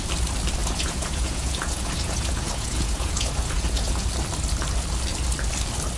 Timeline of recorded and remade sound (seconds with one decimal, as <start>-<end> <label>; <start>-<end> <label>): 0.0-0.6 recorded; 0.6-4.1 remade; 4.1-6.0 recorded

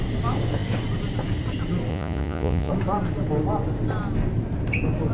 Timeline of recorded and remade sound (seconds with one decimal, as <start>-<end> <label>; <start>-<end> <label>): 0.0-1.9 recorded; 1.9-2.7 remade; 2.7-5.1 recorded

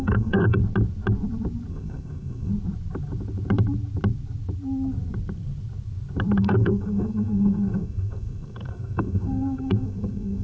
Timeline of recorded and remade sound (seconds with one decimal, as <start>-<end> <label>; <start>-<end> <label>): 0.0-0.6 remade; 0.6-1.7 recorded; 1.7-2.5 remade; 2.5-6.4 recorded; 6.4-10.4 remade

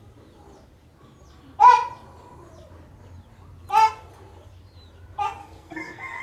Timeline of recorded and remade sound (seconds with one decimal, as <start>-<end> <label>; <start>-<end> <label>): 0.0-5.4 recorded; 5.4-6.2 remade

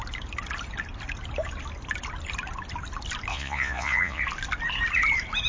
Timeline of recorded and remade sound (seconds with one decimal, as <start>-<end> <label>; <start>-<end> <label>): 0.0-3.3 recorded; 3.3-4.2 remade; 4.2-5.5 recorded